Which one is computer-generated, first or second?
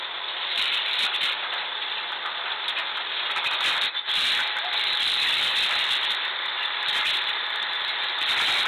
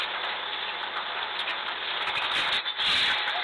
first